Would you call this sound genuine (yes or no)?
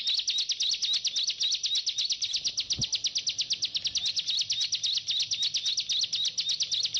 yes